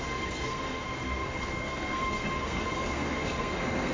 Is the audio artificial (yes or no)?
yes